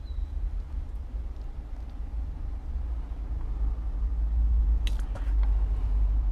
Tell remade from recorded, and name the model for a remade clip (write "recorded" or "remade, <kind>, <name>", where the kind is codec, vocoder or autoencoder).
recorded